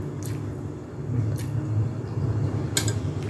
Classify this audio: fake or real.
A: real